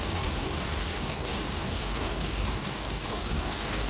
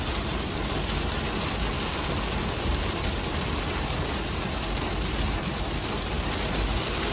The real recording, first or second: second